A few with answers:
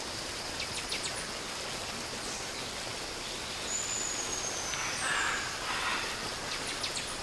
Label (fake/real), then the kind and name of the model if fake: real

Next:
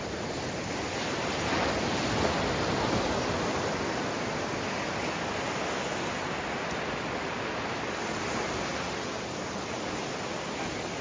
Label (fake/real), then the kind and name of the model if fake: real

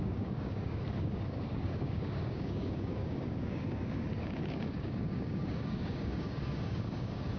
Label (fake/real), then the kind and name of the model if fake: fake, codec, DAC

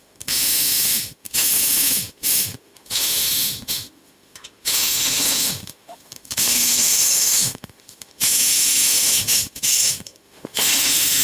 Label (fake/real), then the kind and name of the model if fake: fake, autoencoder, DAC-VAE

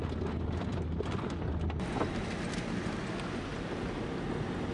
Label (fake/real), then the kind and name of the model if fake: real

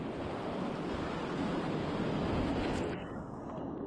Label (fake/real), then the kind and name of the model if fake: real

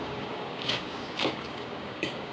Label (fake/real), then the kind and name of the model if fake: fake, codec, DAC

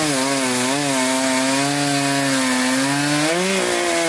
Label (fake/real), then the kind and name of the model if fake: real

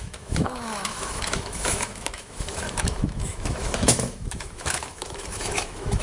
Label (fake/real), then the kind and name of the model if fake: fake, autoencoder, DAC-VAE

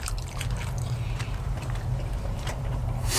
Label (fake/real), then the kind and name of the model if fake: fake, vocoder, BigVGAN v2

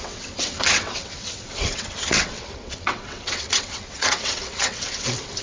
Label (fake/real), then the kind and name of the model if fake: fake, vocoder, WaveNeXt